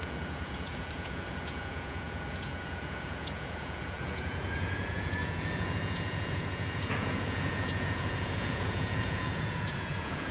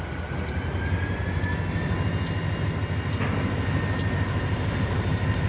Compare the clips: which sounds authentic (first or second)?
second